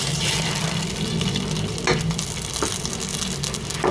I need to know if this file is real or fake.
real